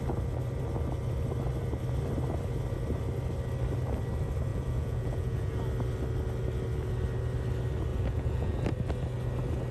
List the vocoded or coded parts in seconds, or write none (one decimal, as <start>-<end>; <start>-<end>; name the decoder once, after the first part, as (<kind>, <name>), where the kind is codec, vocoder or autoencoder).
4.5-5.6 (vocoder, Vocos); 7.9-8.6